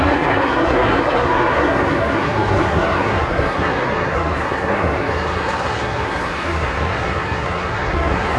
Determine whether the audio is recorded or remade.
remade